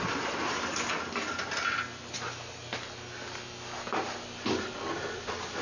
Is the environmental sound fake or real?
real